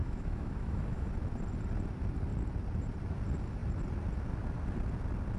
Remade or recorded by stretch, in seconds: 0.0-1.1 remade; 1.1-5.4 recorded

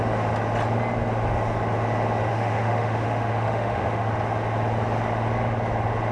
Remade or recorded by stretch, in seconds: 0.0-2.3 recorded; 2.3-4.1 remade; 4.1-6.1 recorded

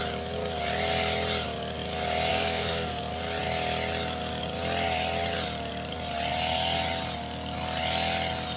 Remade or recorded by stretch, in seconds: 0.0-2.3 recorded; 2.3-3.0 remade; 3.0-8.6 recorded

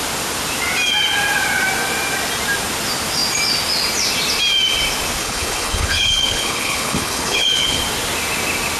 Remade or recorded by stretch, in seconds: 0.0-5.2 recorded; 5.2-7.8 remade; 7.8-8.8 recorded

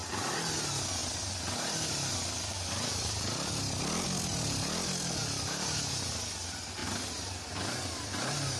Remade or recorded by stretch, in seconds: 0.0-8.6 recorded

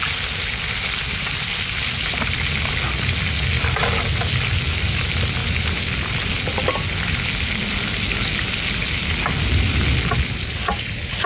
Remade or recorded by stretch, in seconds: 0.0-11.3 recorded